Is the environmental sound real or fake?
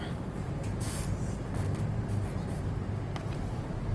fake